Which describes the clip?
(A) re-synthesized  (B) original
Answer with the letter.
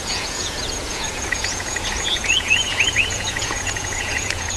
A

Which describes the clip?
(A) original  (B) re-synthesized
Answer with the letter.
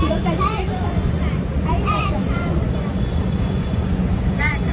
B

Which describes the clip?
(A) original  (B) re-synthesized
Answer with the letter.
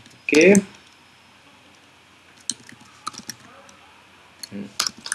A